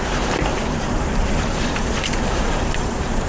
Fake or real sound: fake